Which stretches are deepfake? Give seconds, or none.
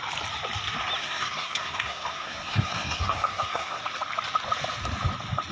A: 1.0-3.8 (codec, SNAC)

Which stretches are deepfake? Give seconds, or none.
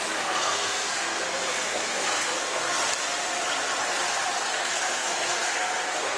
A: 0.0-2.8 (codec, SNAC); 4.5-6.2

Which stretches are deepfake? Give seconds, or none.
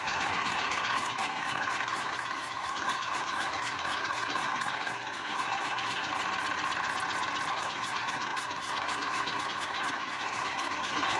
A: 0.0-6.1 (codec, SNAC); 7.5-11.2